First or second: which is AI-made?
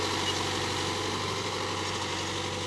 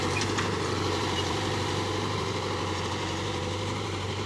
second